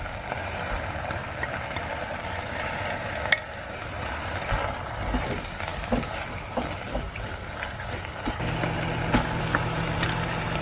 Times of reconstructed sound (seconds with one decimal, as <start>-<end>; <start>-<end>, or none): none